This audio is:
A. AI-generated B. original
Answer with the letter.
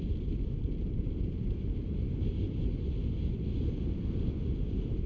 B